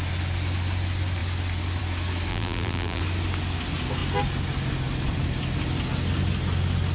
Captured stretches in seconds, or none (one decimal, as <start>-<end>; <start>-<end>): 0.0-2.3; 3.0-6.9

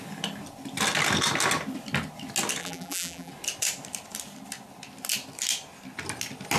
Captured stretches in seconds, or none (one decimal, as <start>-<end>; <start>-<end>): 0.0-2.6; 3.3-6.6

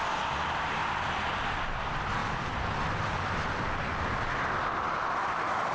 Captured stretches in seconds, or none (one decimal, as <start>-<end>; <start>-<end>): 0.0-5.7

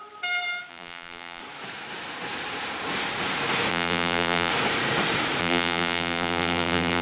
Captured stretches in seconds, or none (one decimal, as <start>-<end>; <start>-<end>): 0.0-0.7; 1.4-3.7; 4.5-5.4

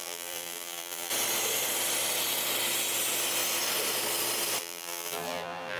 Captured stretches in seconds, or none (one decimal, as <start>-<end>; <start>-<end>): 1.1-4.6

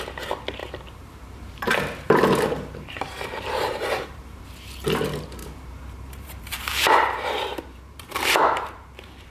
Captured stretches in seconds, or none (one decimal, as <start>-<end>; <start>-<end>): 0.0-0.6; 4.4-5.4